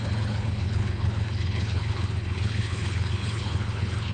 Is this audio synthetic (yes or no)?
yes